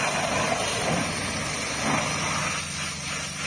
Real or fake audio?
real